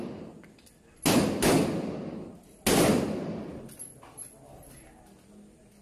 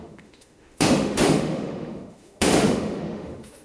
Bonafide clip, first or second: first